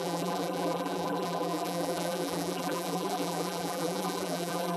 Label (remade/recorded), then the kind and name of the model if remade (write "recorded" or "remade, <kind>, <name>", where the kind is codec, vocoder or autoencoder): remade, vocoder, BigVGAN v2